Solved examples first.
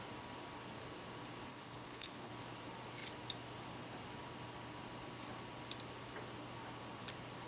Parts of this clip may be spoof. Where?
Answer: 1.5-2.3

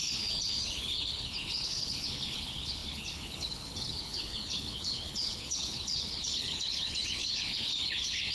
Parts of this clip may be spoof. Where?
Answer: 0.0-8.3

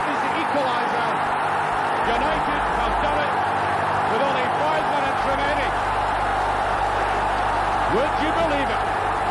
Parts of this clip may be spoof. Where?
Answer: none

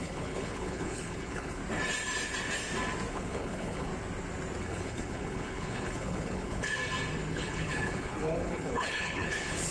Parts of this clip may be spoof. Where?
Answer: 0.0-1.6; 3.1-3.9; 4.6-6.8; 7.3-9.7